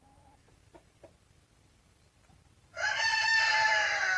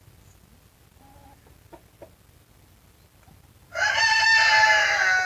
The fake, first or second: first